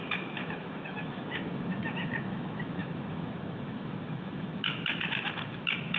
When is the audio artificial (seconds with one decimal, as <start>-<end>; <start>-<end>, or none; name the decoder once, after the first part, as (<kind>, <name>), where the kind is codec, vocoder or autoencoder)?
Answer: 0.0-6.0 (autoencoder, DAC-VAE)